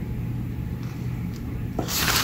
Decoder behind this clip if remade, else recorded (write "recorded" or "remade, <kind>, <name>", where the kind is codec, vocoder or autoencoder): remade, vocoder, BigVGAN v2